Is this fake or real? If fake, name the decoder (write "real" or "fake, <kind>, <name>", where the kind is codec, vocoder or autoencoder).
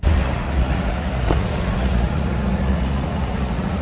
fake, vocoder, Vocos